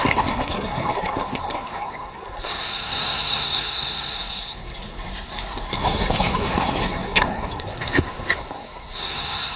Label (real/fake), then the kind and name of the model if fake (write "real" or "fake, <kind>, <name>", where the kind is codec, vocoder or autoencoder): fake, codec, SNAC